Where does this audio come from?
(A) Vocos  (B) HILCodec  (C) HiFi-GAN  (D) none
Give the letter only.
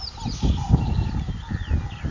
D